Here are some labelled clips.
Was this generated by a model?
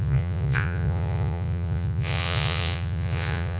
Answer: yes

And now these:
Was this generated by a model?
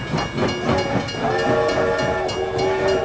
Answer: no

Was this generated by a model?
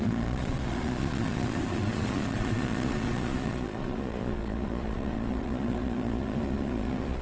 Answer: yes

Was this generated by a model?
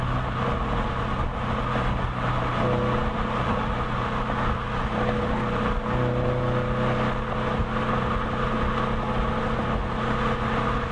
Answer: no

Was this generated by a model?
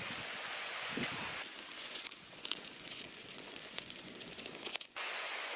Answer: yes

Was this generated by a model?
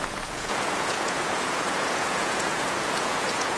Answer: yes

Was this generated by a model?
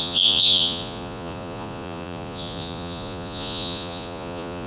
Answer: yes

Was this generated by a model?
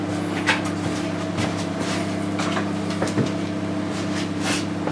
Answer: no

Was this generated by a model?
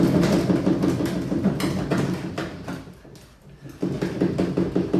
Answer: no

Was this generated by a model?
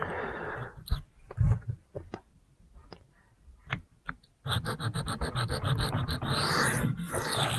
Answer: no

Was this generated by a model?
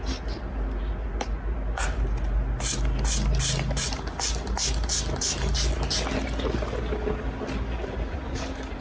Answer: no